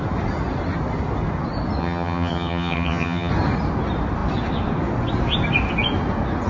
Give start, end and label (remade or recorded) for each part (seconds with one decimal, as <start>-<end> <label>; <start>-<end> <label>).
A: 0.0-1.8 recorded; 1.8-3.3 remade; 3.3-6.5 recorded

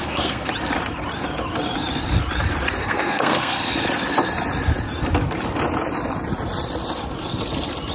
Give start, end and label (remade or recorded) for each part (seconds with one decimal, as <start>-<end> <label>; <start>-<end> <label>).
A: 0.0-0.5 remade; 0.5-2.8 recorded; 2.8-3.7 remade; 3.7-7.9 recorded

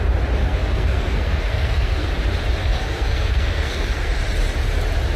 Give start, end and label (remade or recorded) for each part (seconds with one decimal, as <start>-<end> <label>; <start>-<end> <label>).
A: 0.0-0.4 recorded; 0.4-2.1 remade; 2.1-2.6 recorded; 2.6-4.2 remade; 4.2-5.2 recorded

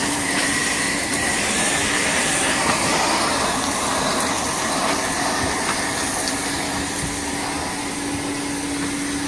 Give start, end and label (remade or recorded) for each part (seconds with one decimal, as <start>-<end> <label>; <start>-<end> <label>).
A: 0.0-2.8 remade; 2.8-9.3 recorded

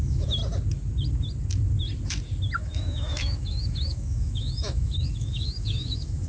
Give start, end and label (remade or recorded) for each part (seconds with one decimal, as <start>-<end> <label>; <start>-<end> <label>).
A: 0.0-0.4 remade; 0.4-2.6 recorded; 2.6-6.3 remade